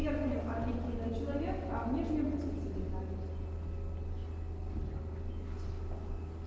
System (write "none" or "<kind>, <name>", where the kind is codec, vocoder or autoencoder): none